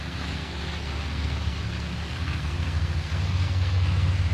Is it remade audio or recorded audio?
remade